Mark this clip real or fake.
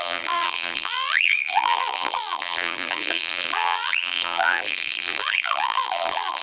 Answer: fake